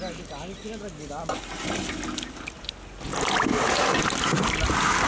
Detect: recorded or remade recorded